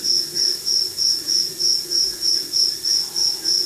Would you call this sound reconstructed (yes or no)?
no